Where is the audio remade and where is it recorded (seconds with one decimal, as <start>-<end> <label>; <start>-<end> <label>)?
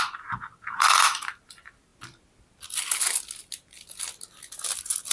0.0-5.1 recorded